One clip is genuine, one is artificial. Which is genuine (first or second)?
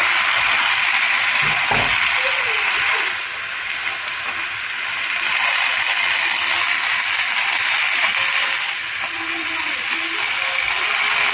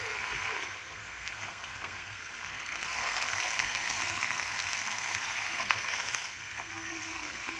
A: first